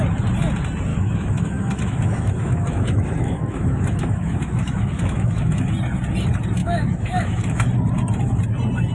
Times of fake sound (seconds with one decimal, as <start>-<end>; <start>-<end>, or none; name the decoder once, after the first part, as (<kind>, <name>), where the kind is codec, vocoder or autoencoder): 0.9-5.7 (autoencoder, DAC-VAE); 6.6-7.6